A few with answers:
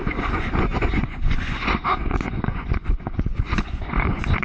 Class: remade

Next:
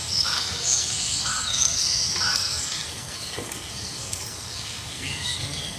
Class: remade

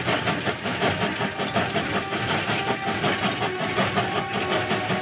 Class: recorded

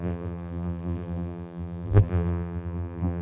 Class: remade